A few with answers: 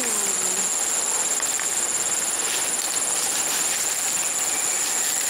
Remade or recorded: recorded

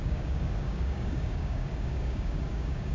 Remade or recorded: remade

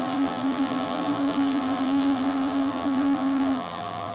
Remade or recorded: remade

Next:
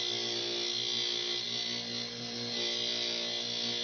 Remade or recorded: recorded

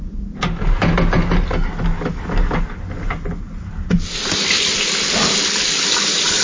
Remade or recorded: recorded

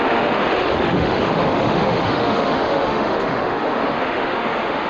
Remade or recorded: remade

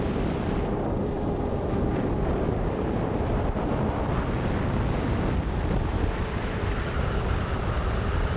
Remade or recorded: recorded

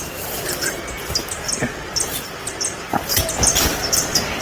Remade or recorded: recorded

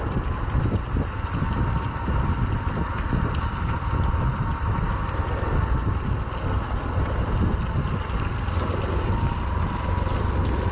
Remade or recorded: recorded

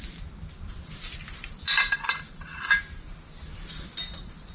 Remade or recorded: recorded